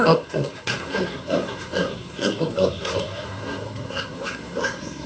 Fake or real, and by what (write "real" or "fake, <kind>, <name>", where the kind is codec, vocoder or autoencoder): fake, codec, SNAC